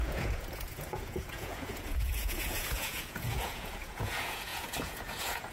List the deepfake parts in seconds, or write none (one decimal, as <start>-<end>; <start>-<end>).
0.0-5.5